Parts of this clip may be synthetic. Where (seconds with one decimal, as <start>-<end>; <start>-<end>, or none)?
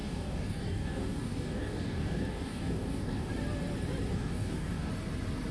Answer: 0.0-3.3; 4.1-4.9